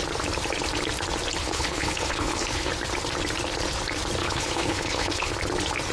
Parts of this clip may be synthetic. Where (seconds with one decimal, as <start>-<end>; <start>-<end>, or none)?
1.4-2.7; 4.2-5.3